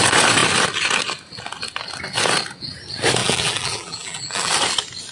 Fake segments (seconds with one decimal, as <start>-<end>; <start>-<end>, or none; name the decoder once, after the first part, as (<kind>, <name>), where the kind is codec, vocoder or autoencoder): 3.2-4.5 (vocoder, BigVGAN v2)